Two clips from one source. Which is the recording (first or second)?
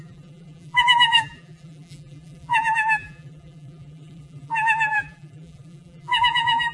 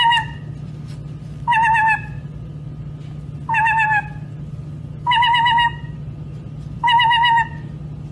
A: second